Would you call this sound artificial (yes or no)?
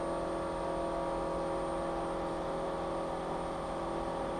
no